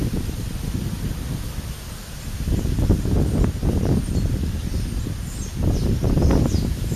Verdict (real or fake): fake